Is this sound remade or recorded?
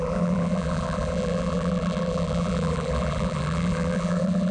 remade